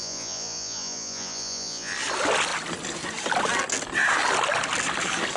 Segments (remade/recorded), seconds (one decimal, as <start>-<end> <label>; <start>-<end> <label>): 0.0-1.9 remade; 1.9-5.4 recorded